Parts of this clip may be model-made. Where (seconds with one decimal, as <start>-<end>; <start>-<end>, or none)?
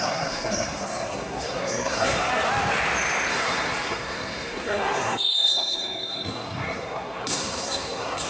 0.0-2.3; 3.3-8.3